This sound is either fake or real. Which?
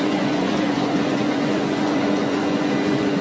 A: fake